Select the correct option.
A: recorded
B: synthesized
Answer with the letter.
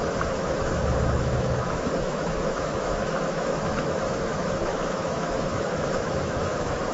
B